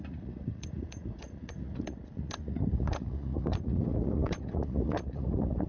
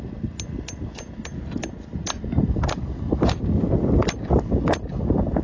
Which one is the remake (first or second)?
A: first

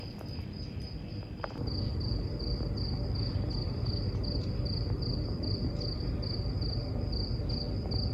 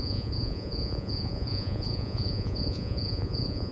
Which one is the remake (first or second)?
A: second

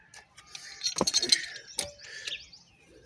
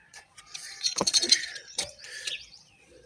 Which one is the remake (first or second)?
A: second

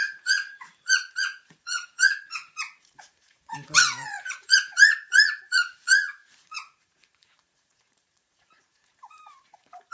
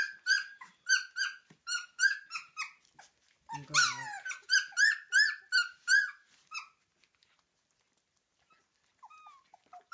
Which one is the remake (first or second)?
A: first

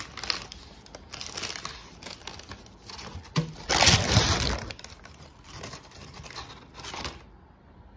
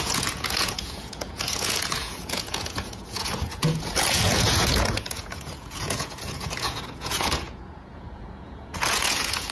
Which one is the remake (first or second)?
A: second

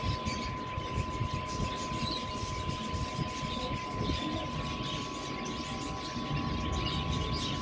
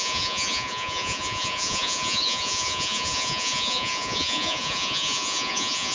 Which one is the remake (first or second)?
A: second